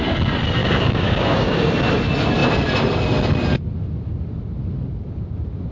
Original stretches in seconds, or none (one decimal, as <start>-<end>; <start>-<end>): 0.0-0.6; 1.6-5.7